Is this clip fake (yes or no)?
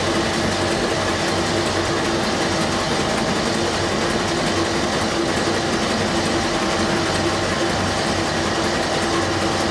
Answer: no